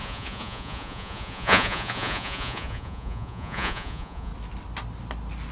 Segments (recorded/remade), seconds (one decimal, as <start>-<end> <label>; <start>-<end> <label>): 0.0-4.3 remade; 4.3-5.5 recorded